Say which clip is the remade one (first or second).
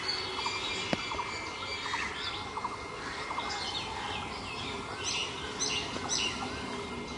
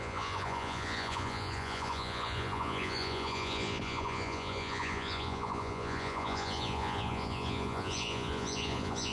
second